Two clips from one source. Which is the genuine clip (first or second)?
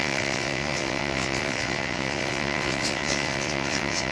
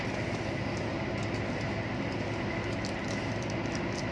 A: second